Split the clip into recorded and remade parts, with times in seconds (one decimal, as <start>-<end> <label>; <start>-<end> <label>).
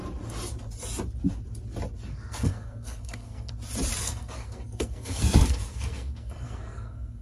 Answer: 0.0-2.1 recorded; 2.1-3.5 remade; 3.5-4.0 recorded; 4.0-7.2 remade